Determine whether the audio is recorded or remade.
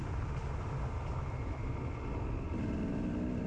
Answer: recorded